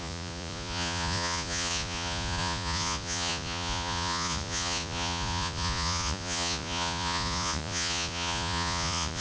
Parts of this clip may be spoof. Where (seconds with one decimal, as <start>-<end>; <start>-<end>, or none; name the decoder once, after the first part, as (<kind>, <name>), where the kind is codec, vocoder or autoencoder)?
0.0-9.2 (vocoder, Vocos)